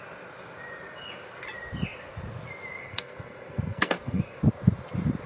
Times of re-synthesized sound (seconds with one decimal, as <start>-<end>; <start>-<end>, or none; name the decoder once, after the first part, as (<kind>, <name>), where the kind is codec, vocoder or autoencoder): 2.8-4.4 (codec, SNAC)